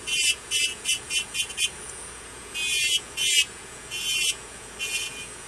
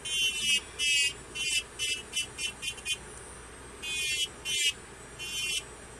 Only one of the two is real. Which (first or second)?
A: second